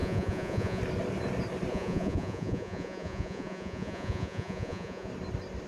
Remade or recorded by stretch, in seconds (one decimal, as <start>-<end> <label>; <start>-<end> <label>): 0.0-0.8 remade; 0.8-1.7 recorded; 1.7-5.1 remade; 5.1-5.7 recorded